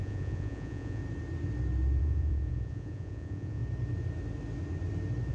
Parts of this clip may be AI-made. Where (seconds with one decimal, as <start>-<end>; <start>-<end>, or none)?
0.0-1.0; 2.0-3.6

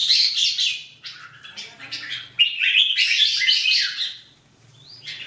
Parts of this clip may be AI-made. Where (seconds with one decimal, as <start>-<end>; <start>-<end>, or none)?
none

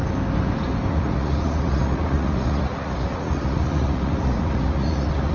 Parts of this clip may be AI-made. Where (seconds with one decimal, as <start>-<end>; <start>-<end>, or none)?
0.9-5.3